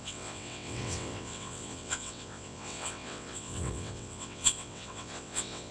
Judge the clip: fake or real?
fake